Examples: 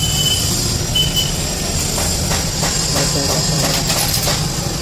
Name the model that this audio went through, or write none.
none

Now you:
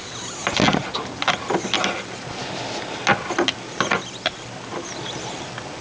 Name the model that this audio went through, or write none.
none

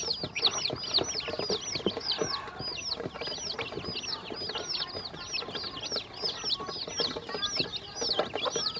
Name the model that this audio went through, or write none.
none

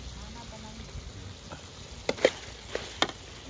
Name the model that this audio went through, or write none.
none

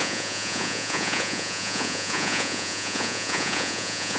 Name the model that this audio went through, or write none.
vocoder, Vocos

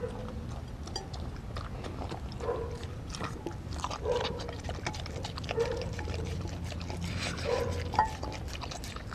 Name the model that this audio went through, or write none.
vocoder, BigVGAN v2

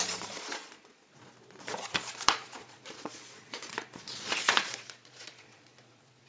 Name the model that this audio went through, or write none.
vocoder, Vocos